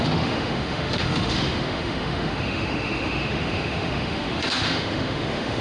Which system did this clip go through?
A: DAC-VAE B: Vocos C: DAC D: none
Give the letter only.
A